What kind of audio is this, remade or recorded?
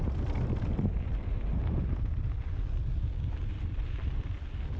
recorded